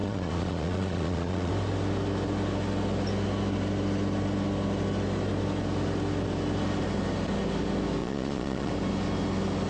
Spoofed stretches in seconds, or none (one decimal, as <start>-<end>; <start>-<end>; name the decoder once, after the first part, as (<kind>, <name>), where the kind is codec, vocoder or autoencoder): 0.0-1.5 (vocoder, Vocos); 8.0-8.7